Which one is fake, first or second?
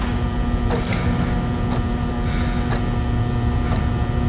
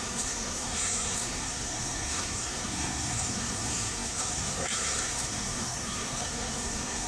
second